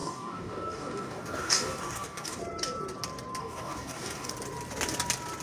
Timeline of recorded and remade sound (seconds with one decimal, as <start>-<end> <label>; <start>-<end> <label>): 0.0-2.4 remade; 2.4-3.4 recorded; 3.4-4.3 remade; 4.3-5.4 recorded